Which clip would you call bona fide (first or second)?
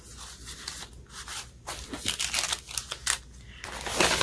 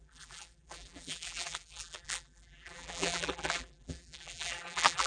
first